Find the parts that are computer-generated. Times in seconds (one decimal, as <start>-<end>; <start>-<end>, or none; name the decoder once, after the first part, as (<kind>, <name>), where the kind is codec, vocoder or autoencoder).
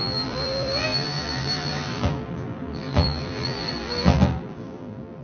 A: 0.0-5.2 (vocoder, BigVGAN v2)